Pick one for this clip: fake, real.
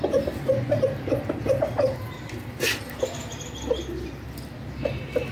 real